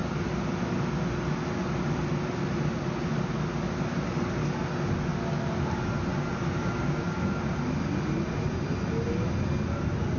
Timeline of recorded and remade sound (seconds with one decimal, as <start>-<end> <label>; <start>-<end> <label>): 0.0-10.2 recorded